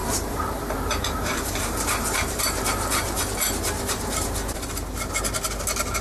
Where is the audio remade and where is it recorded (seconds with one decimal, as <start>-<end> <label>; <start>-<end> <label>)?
0.0-3.2 remade; 3.2-6.0 recorded